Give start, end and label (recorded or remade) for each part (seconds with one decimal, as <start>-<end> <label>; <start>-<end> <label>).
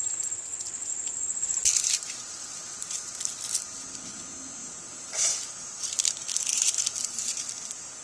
0.0-0.9 recorded; 0.9-3.1 remade; 3.1-4.6 recorded; 4.6-7.4 remade; 7.4-8.0 recorded